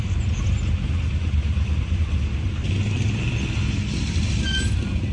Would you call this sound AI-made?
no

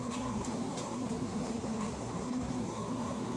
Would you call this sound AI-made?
yes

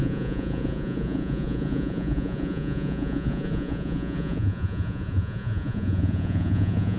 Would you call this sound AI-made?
yes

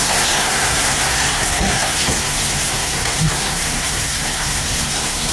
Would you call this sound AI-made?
yes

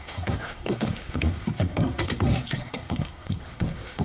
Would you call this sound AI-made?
yes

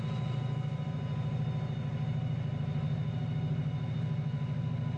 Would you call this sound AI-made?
no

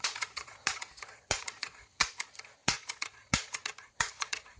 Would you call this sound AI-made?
yes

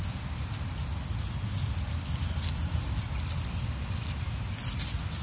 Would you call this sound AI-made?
no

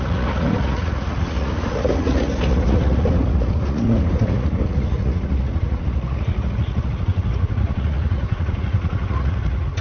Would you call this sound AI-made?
yes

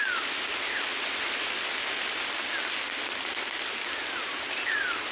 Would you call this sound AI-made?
no